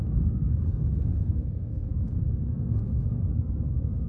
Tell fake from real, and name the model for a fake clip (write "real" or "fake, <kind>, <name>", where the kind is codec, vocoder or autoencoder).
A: fake, codec, SNAC